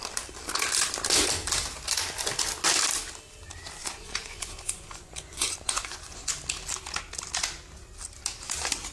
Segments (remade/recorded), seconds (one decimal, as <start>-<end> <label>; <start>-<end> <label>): 0.0-3.8 recorded; 3.8-6.3 remade; 6.3-8.9 recorded